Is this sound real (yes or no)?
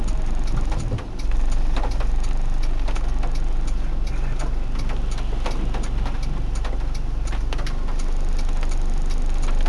yes